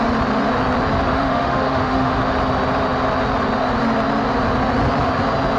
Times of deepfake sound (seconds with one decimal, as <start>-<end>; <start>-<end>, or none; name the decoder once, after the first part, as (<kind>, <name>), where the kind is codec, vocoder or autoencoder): 1.1-2.2 (autoencoder, DAC-VAE)